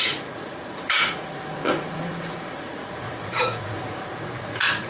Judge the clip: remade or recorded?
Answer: remade